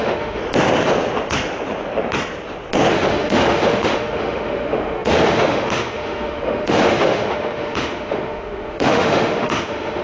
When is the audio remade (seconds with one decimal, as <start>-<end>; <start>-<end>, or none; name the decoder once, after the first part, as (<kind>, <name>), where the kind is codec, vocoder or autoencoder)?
0.0-0.4 (autoencoder, DAC-VAE); 2.9-10.0

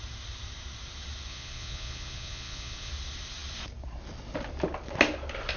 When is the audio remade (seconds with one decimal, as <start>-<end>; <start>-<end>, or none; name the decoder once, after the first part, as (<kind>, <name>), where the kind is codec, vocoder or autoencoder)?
1.3-2.9 (vocoder, Vocos)

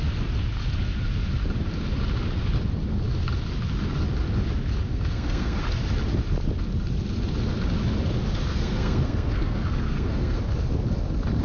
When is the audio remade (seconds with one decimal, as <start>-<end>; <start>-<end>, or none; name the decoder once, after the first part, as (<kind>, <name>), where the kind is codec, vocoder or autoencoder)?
4.9-5.6 (codec, SNAC); 8.5-10.4

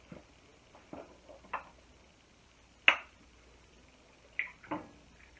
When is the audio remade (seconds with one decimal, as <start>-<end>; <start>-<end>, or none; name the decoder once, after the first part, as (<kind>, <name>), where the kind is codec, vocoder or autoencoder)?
none

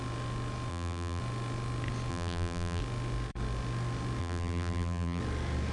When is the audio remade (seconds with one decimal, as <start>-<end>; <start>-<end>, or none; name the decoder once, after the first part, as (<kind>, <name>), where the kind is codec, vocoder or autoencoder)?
0.7-1.2 (vocoder, BigVGAN v2); 2.1-2.8; 4.2-5.2

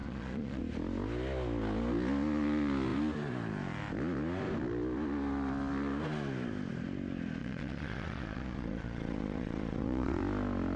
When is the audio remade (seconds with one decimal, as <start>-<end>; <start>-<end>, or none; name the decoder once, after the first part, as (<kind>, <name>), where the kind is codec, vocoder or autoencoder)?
0.0-0.6 (vocoder, Vocos); 7.4-10.2

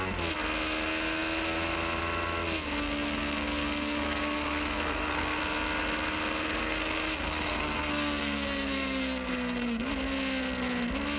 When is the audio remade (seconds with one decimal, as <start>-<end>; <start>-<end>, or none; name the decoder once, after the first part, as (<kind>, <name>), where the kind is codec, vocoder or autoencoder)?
2.8-5.4 (codec, SNAC); 6.6-9.9